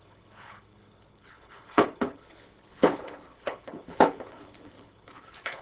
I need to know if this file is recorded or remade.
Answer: remade